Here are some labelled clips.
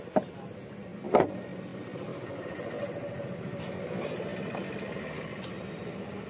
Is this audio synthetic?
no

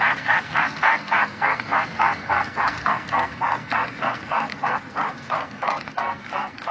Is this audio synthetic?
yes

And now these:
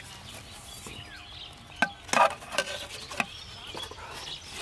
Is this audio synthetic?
no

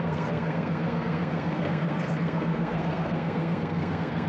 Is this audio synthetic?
yes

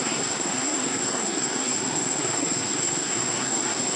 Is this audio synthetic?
yes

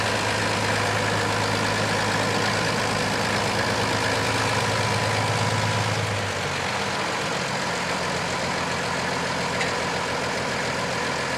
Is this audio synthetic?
no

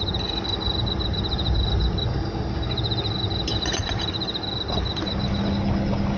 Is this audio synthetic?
no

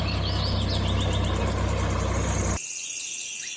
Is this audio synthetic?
no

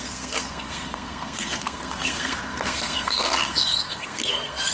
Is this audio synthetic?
yes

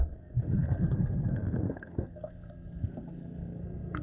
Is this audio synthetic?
yes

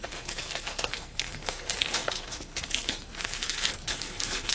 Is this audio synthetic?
yes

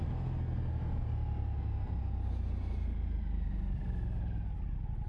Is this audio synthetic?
no